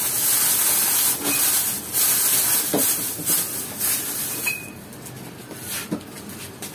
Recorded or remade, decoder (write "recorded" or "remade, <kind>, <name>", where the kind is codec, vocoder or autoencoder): recorded